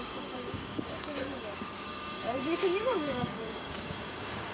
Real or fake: fake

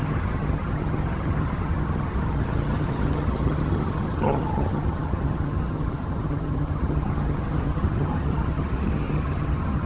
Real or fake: fake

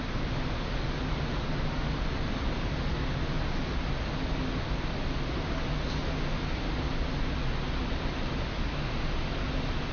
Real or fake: real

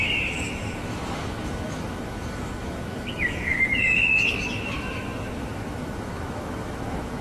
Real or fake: fake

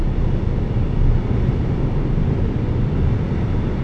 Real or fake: real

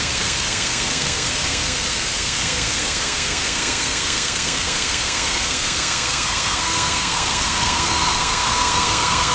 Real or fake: fake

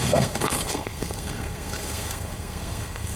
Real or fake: fake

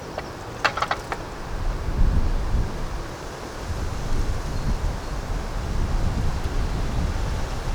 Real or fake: real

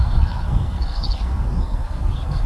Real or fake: fake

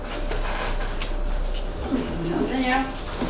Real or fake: real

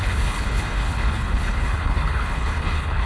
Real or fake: fake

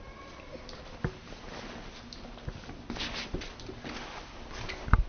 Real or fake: real